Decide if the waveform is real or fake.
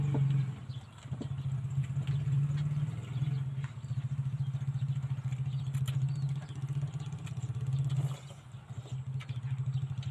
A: real